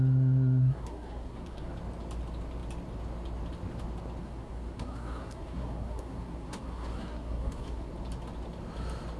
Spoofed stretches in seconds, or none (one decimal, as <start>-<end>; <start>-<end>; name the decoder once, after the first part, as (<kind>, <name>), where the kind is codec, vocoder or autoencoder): 0.6-1.7 (codec, SNAC); 4.2-7.9